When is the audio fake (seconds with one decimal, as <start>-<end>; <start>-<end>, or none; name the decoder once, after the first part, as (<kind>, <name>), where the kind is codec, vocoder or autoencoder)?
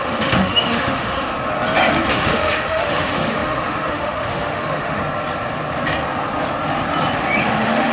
0.0-1.3 (autoencoder, DAC-VAE); 2.1-5.0; 7.4-7.9